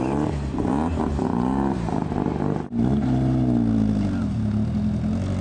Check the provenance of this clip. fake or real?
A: real